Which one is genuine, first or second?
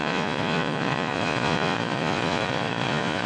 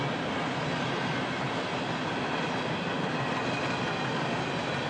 second